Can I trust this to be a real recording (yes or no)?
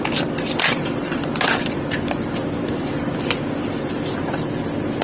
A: yes